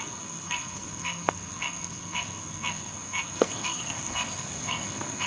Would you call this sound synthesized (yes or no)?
yes